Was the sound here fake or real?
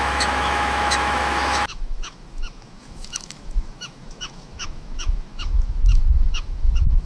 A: fake